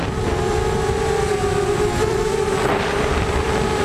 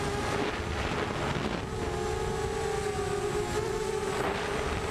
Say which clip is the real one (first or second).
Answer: second